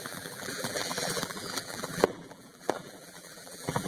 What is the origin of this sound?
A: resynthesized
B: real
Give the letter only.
A